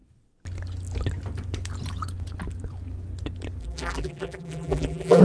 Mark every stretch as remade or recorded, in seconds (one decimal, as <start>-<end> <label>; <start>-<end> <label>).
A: 0.0-3.6 recorded; 3.6-5.2 remade